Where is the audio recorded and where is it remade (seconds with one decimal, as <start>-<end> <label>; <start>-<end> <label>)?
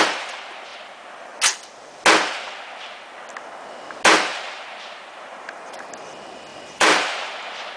0.0-4.3 recorded; 4.3-5.9 remade; 5.9-6.5 recorded; 6.5-7.8 remade